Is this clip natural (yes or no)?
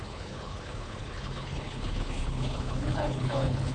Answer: no